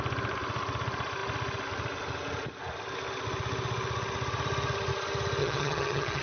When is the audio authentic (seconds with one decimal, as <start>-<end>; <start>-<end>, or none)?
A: 0.0-5.4